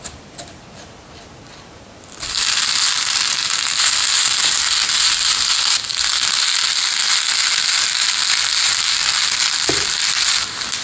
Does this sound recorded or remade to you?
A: recorded